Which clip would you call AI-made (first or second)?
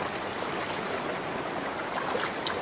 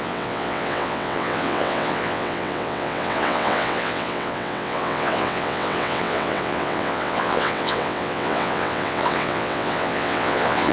second